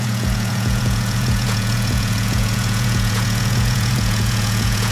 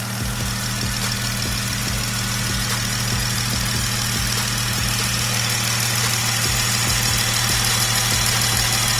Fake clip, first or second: first